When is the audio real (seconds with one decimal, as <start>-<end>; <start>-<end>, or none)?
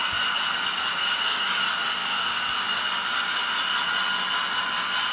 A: 0.0-1.0; 1.6-2.0; 2.8-5.1